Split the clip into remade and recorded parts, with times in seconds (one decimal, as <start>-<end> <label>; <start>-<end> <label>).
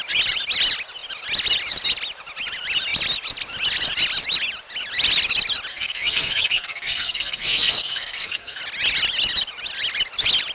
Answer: 0.0-5.7 recorded; 5.7-8.6 remade; 8.6-10.5 recorded